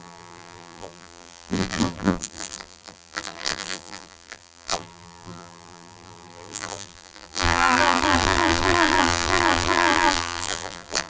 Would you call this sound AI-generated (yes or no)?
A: yes